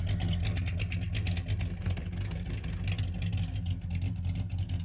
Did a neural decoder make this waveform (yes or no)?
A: no